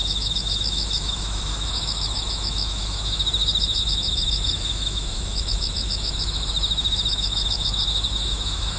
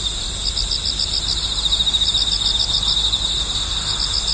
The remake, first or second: first